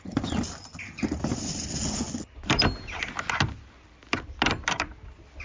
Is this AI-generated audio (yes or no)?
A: no